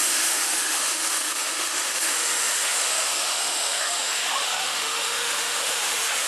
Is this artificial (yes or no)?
yes